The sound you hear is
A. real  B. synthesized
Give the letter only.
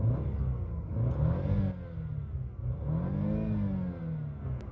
A